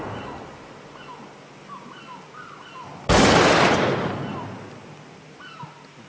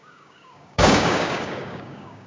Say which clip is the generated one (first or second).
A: second